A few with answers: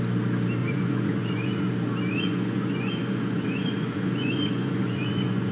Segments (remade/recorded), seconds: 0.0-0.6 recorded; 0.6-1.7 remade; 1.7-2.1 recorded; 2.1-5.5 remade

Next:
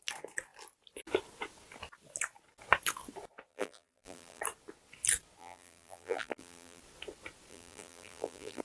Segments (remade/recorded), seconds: 0.0-3.5 recorded; 3.5-4.4 remade; 4.4-5.4 recorded; 5.4-6.8 remade; 6.8-7.5 recorded; 7.5-8.6 remade

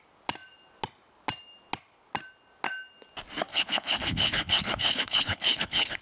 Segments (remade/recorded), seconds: 0.0-3.5 recorded; 3.5-6.0 remade

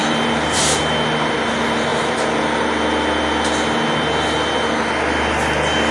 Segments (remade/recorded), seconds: 0.0-0.8 remade; 0.8-5.9 recorded

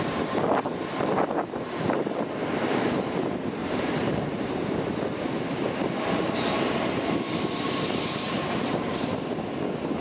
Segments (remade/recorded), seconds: 0.0-3.6 recorded; 3.6-4.9 remade; 4.9-10.0 recorded